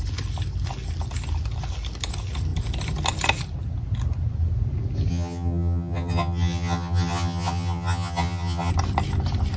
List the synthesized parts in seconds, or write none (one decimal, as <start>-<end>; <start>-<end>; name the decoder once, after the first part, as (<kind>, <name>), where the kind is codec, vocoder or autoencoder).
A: 5.1-8.7 (vocoder, HiFi-GAN)